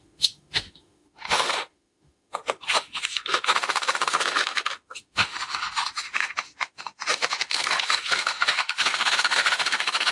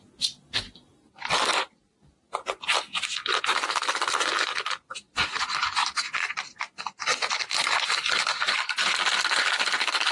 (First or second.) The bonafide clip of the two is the second